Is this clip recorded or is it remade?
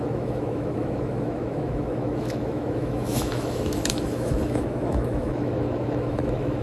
remade